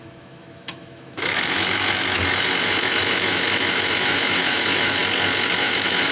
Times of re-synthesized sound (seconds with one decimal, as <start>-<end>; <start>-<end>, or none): 0.0-5.0; 5.6-6.1

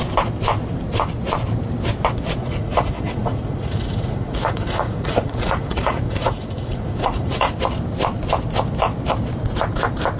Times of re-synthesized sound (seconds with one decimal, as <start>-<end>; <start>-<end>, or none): 2.4-7.5